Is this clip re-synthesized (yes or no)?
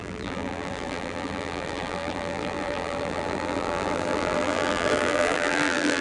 yes